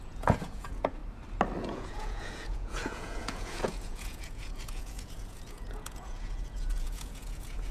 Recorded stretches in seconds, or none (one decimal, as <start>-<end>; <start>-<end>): 1.0-1.6